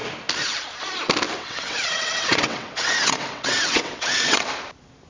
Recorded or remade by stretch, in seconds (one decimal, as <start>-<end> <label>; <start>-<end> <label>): 0.0-1.4 recorded; 1.4-4.5 remade; 4.5-5.1 recorded